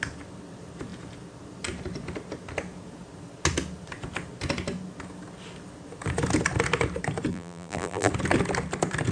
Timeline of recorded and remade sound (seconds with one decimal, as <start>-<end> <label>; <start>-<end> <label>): 0.0-7.3 recorded; 7.3-8.1 remade; 8.1-9.1 recorded